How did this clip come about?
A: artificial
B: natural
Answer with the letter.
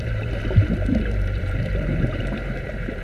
A